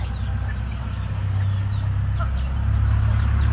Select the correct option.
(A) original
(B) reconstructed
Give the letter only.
A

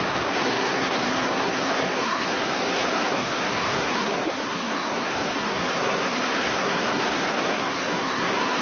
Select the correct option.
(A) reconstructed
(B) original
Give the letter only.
A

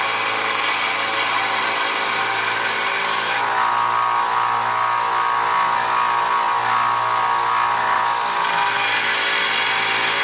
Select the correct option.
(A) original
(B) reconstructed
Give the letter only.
A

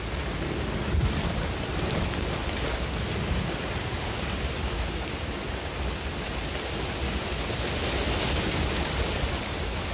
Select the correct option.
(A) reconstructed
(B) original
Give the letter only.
B